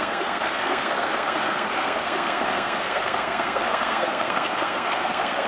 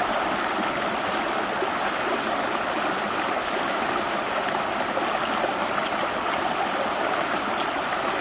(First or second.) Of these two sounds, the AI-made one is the first